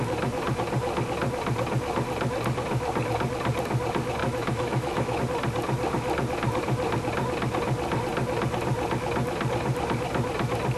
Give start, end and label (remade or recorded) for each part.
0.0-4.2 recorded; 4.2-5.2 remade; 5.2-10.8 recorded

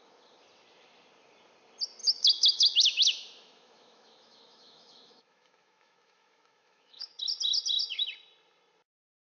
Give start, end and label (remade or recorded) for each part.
0.0-2.0 recorded; 2.0-7.2 remade; 7.2-9.3 recorded

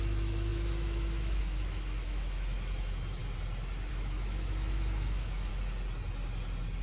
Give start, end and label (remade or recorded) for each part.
0.0-3.2 remade; 3.2-3.9 recorded; 3.9-5.5 remade; 5.5-6.8 recorded

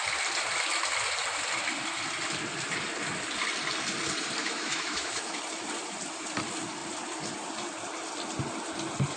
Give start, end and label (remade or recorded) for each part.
0.0-4.4 recorded; 4.4-5.4 remade; 5.4-9.2 recorded

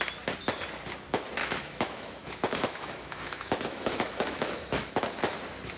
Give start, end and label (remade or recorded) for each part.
0.0-1.4 recorded; 1.4-4.9 remade; 4.9-5.8 recorded

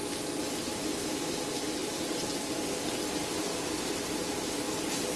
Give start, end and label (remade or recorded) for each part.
0.0-0.7 recorded; 0.7-1.3 remade; 1.3-5.2 recorded

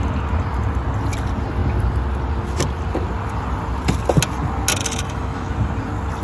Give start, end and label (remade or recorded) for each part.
0.0-4.8 recorded; 4.8-5.5 remade; 5.5-6.2 recorded